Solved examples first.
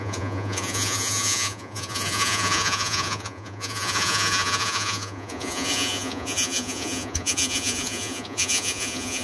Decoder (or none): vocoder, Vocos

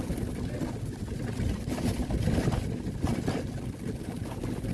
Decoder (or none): none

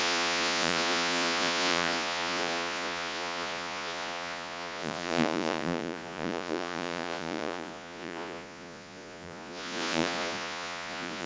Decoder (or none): vocoder, Vocos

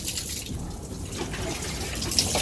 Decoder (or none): none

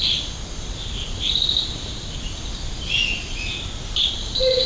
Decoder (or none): none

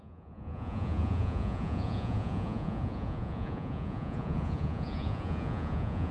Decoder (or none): vocoder, Vocos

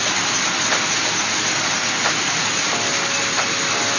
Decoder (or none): none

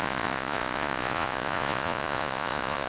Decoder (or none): vocoder, Vocos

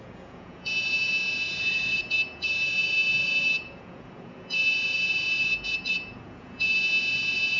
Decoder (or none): vocoder, Vocos